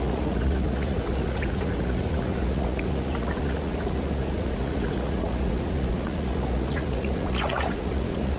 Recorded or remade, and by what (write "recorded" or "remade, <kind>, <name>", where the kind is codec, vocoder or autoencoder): remade, vocoder, Vocos